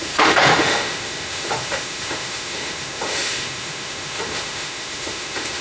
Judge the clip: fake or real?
fake